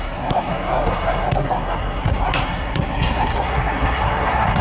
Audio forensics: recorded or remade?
remade